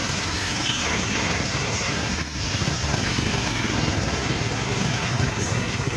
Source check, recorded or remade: remade